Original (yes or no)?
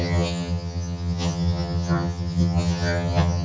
no